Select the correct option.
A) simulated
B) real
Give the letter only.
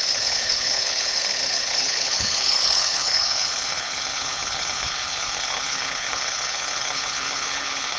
A